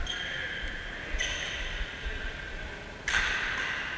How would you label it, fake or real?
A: real